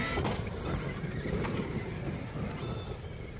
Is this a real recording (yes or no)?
yes